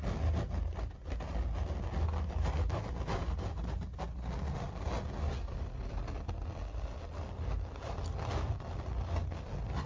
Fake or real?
real